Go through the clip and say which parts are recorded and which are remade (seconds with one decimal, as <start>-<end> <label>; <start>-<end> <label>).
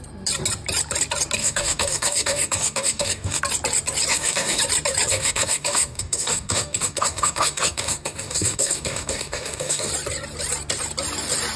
0.0-1.4 recorded; 1.4-3.4 remade; 3.4-4.1 recorded; 4.1-4.6 remade; 4.6-5.1 recorded; 5.1-9.9 remade; 9.9-11.6 recorded